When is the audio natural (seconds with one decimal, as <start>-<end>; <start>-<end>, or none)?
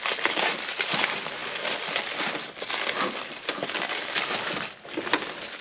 1.4-4.8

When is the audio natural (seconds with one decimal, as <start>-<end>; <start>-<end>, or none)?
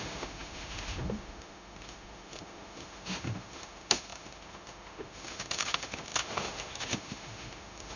none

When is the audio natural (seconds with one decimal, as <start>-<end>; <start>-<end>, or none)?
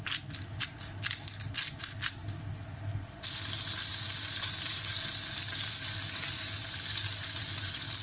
0.0-8.0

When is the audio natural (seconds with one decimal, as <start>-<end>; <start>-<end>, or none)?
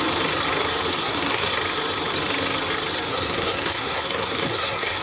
0.0-0.9; 1.5-3.1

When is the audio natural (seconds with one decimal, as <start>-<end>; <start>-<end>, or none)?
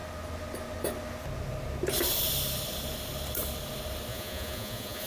0.0-4.1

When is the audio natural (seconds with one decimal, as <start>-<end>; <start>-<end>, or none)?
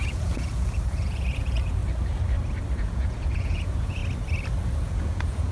1.8-2.8; 4.0-4.8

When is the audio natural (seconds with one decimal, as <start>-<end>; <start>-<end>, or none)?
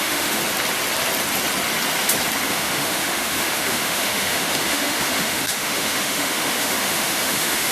0.4-2.5